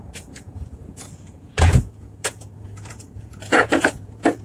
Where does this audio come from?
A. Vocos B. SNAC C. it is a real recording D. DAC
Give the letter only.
A